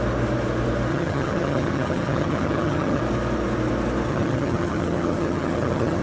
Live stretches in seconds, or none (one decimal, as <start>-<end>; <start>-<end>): 0.0-0.9; 3.0-4.1